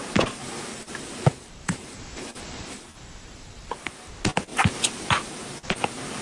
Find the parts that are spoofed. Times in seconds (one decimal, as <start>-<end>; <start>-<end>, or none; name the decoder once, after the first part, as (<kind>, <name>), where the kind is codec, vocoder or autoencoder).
0.4-4.1 (vocoder, BigVGAN v2)